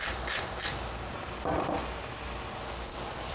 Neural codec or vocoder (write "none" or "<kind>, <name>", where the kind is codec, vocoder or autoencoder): none